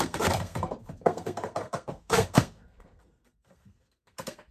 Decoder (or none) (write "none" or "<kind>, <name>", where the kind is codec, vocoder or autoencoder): codec, SNAC